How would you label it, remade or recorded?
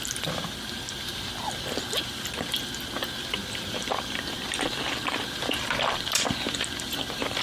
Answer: recorded